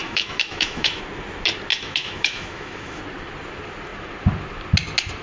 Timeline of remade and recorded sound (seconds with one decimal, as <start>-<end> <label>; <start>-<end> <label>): 0.0-1.0 remade; 1.0-1.7 recorded; 1.7-3.0 remade; 3.0-5.2 recorded